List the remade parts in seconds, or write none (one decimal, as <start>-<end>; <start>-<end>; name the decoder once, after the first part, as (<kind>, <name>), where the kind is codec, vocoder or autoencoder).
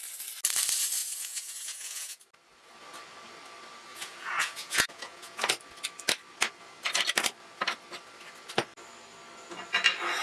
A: 1.0-2.2 (vocoder, Vocos); 3.9-5.4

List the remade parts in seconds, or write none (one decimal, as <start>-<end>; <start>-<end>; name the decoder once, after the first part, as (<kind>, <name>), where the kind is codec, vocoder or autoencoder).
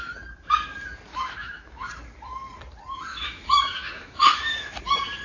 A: 1.1-1.9 (autoencoder, DAC-VAE); 3.1-4.7